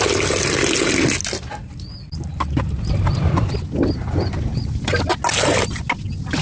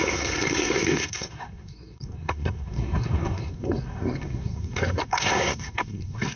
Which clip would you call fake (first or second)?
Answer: second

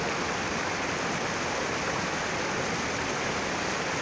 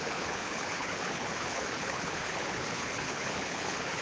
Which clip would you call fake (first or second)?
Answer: second